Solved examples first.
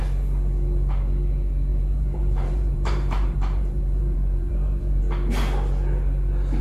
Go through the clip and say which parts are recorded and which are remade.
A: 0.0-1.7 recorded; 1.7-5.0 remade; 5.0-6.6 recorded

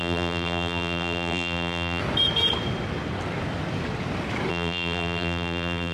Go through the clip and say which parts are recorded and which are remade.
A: 0.0-2.0 remade; 2.0-4.5 recorded; 4.5-5.9 remade

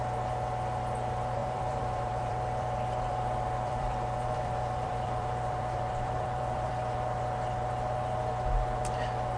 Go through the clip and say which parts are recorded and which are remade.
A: 0.0-1.4 recorded; 1.4-6.7 remade; 6.7-9.4 recorded

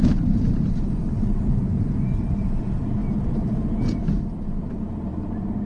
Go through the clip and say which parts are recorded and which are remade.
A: 0.0-5.7 remade